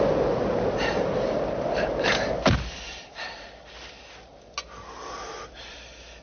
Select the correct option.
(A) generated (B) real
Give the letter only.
B